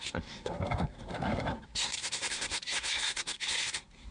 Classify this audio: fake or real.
fake